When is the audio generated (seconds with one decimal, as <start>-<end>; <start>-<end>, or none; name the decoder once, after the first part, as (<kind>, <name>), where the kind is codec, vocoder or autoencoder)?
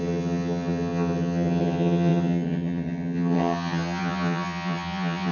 0.0-5.3 (vocoder, HiFi-GAN)